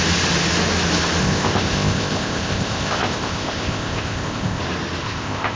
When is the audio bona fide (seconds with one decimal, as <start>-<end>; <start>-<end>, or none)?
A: 0.0-1.2; 4.6-5.0